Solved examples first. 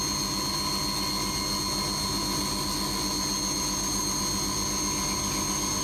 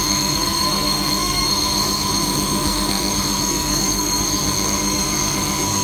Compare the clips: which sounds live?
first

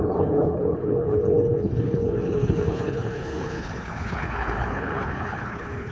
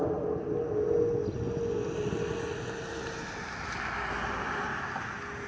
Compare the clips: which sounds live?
second